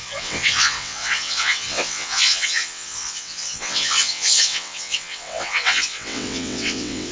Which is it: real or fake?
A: fake